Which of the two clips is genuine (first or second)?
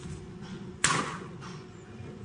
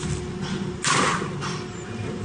second